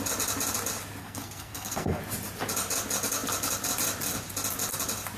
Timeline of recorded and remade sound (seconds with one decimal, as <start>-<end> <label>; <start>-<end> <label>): 0.0-1.0 recorded; 1.0-2.0 remade; 2.0-5.2 recorded